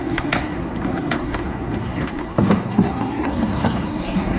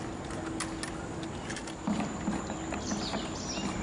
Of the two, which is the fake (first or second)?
first